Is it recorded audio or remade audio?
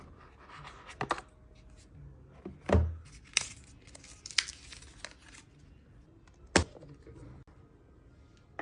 recorded